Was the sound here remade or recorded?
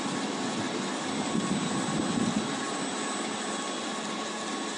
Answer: recorded